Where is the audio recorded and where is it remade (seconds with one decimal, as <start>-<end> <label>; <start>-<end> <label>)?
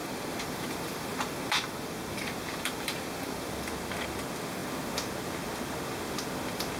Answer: 0.0-3.7 remade; 3.7-6.8 recorded